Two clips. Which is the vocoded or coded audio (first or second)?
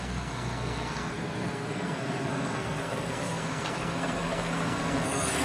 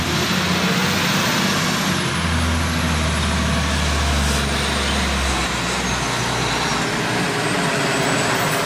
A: first